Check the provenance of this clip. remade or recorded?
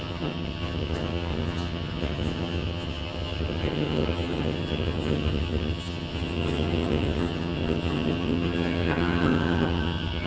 remade